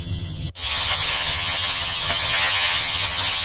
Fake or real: fake